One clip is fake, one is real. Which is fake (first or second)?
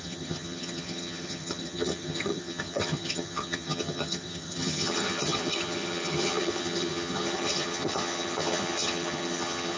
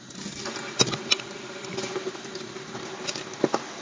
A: first